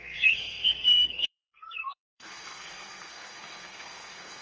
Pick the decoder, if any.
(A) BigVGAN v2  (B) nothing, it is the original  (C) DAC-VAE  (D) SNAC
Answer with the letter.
D